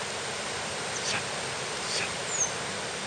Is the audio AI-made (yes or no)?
no